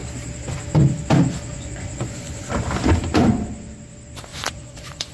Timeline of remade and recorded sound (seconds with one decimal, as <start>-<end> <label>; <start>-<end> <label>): 0.0-1.5 recorded; 1.5-2.5 remade; 2.5-4.3 recorded; 4.3-5.1 remade